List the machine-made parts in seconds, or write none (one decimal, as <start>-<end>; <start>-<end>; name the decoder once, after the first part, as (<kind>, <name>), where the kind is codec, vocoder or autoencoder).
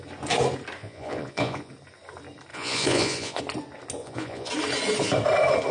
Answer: 0.8-1.7 (vocoder, Vocos); 2.5-3.4; 4.0-4.5